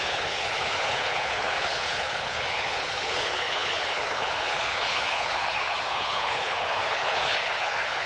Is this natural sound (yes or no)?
no